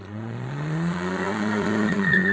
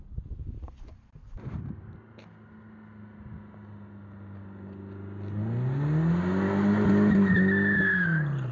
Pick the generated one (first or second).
first